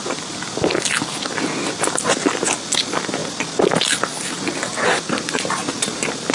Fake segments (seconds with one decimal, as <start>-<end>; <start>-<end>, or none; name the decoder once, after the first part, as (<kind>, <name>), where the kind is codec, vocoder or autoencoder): none